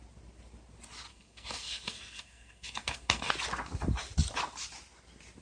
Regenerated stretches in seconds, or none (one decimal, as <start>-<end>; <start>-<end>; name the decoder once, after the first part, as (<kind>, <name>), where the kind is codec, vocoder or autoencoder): 1.1-3.3 (codec, SNAC)